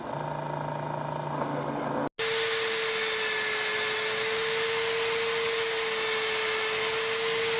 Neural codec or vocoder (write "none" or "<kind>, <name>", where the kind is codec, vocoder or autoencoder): none